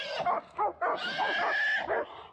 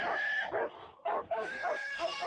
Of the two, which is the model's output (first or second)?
second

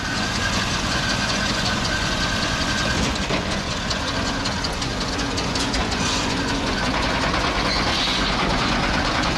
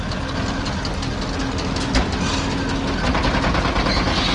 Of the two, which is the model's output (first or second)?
first